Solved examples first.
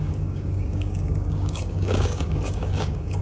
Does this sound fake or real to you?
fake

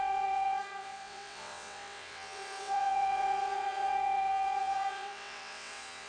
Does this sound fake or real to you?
fake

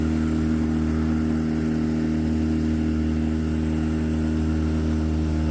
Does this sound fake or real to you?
real